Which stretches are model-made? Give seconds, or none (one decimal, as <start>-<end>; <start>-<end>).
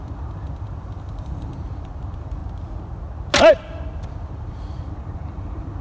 0.0-2.4; 4.0-5.8